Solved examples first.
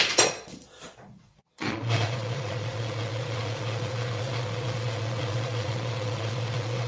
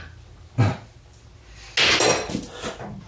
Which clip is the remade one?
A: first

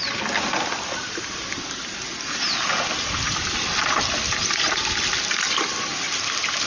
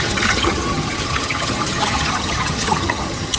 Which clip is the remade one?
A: second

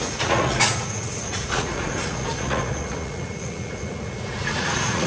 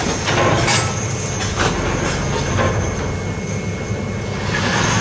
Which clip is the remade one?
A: first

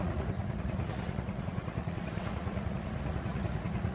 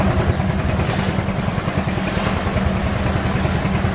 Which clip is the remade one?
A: first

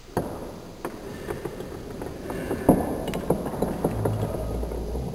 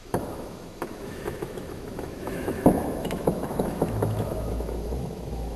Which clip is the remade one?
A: second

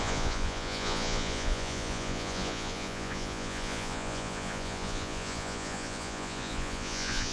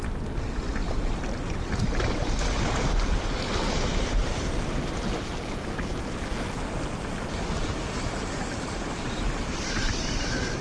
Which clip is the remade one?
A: first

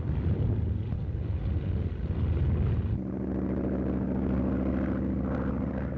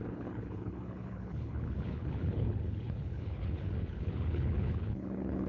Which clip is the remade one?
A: second